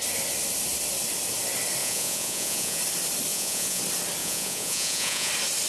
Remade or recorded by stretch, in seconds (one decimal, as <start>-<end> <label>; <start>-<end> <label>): 0.0-1.8 recorded; 1.8-2.8 remade; 2.8-3.3 recorded; 3.3-3.8 remade; 3.8-4.2 recorded; 4.2-5.3 remade; 5.3-5.7 recorded